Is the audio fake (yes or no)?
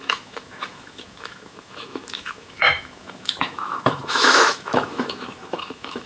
yes